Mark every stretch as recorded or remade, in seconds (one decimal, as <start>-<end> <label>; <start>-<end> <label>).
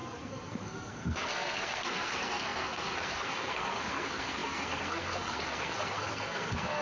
0.0-6.8 remade